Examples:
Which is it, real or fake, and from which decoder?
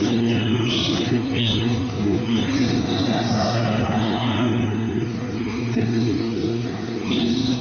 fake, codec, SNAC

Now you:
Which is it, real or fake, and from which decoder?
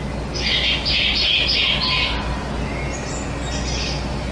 real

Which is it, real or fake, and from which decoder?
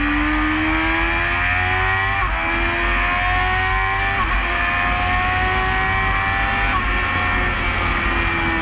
real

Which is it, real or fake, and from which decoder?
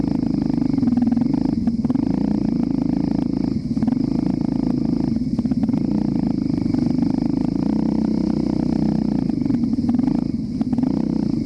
real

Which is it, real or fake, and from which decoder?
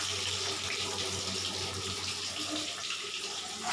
real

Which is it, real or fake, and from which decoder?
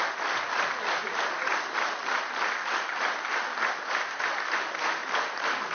real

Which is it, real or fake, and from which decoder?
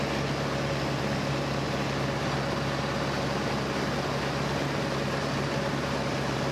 real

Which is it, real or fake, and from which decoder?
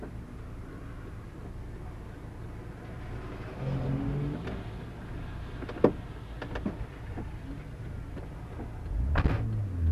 real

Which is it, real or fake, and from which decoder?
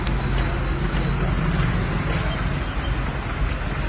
real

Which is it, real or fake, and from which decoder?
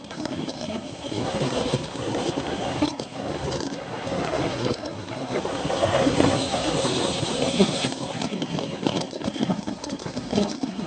fake, codec, SNAC